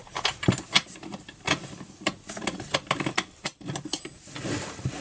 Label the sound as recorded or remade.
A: recorded